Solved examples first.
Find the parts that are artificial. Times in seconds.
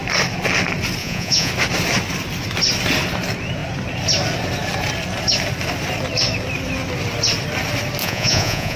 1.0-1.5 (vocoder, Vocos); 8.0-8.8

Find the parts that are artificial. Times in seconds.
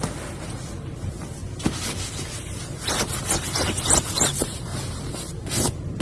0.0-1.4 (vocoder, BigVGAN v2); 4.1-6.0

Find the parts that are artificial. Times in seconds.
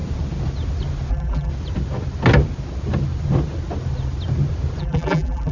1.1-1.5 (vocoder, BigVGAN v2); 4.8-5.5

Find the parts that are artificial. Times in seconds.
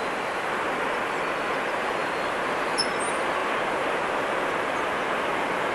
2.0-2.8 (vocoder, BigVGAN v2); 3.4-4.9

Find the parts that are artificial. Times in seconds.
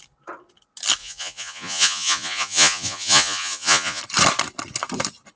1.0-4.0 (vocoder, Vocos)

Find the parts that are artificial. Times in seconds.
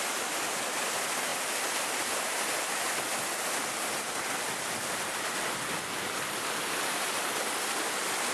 none